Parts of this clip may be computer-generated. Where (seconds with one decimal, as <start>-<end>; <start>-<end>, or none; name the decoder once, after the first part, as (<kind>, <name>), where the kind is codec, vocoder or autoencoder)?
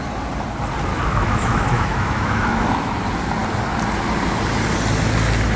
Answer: 0.9-2.9 (autoencoder, DAC-VAE)